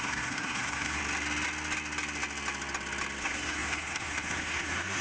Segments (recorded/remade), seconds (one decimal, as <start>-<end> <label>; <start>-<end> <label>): 0.0-1.0 remade; 1.0-3.2 recorded; 3.2-5.0 remade